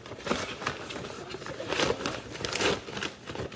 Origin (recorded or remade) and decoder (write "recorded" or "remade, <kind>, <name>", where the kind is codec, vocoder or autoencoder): recorded